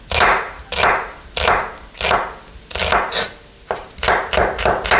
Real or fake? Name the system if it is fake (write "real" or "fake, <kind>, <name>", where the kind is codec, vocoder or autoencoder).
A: real